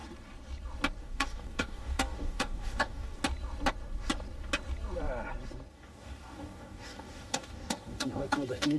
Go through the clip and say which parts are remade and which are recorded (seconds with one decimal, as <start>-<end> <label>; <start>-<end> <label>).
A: 0.0-1.0 recorded; 1.0-3.2 remade; 3.2-5.7 recorded; 5.7-8.8 remade